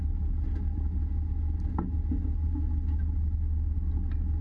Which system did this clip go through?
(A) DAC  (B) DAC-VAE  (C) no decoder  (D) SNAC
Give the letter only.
C